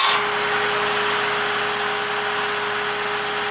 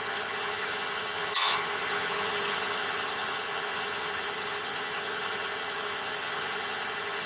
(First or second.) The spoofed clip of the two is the second